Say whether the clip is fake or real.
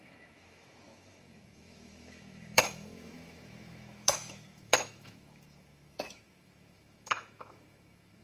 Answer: fake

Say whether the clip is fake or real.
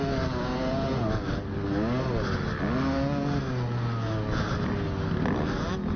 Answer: real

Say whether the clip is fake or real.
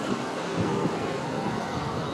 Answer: fake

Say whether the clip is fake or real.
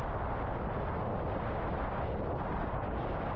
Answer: real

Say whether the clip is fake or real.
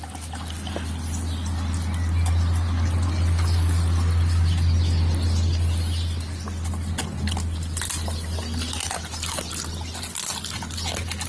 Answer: real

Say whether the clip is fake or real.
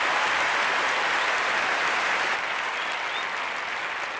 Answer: real